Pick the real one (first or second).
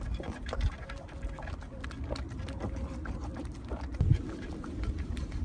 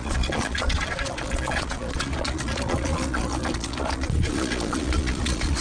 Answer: first